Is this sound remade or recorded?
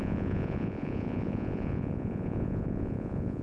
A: remade